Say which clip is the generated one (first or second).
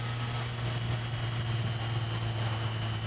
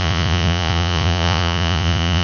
second